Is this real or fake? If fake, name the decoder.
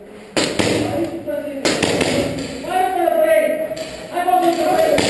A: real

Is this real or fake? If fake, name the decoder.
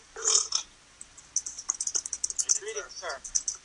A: real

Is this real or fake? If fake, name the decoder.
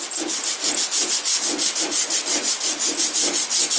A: fake, vocoder, BigVGAN v2